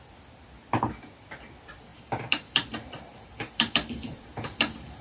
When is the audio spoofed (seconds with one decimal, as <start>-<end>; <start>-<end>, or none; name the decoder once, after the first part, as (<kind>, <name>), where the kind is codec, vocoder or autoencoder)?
1.9-5.0 (vocoder, BigVGAN v2)